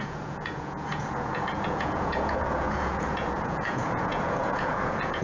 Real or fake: fake